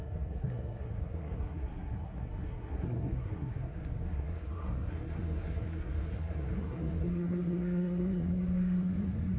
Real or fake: fake